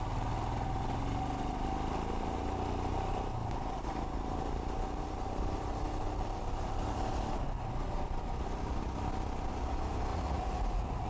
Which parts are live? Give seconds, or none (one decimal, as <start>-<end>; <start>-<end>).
0.0-10.1